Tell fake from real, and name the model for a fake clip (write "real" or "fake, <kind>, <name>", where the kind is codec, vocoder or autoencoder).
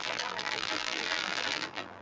fake, vocoder, BigVGAN v2